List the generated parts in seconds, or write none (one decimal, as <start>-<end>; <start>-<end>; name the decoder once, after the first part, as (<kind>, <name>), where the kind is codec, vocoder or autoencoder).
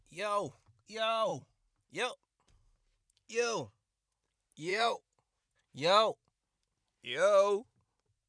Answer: 4.7-5.6 (vocoder, Vocos)